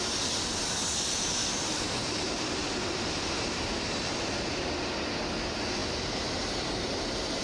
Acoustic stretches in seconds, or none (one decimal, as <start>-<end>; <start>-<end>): 0.0-0.5; 4.9-7.4